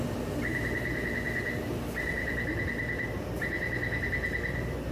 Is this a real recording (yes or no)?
yes